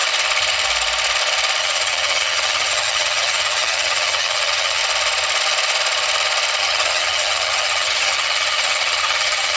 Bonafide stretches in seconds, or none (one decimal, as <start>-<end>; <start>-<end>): 0.0-1.6; 4.8-6.6

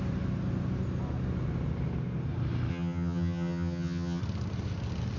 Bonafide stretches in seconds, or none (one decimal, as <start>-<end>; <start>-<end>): 0.0-2.7; 4.2-5.2

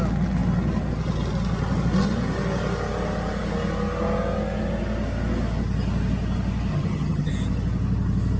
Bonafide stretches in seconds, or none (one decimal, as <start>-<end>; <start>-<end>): 0.0-6.7; 7.3-8.4

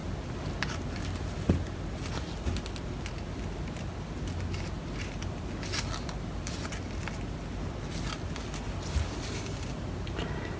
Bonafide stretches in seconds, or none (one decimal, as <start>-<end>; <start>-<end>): 0.0-10.6

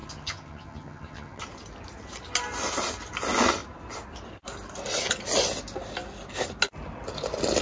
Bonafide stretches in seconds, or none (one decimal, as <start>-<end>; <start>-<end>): 1.4-7.6

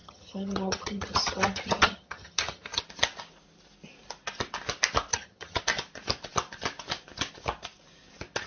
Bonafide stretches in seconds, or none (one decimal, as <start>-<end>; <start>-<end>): 2.8-5.1; 5.6-8.5

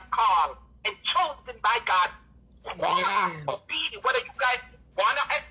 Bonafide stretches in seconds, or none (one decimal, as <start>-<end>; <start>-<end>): 0.0-2.8; 3.9-5.5

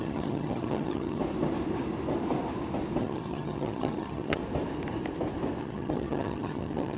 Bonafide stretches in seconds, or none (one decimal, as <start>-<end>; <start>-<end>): 1.2-3.0; 4.4-5.6